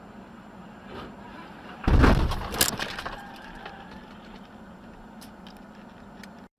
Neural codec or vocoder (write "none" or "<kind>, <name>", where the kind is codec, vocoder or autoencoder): none